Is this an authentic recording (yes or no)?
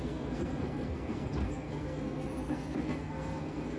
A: no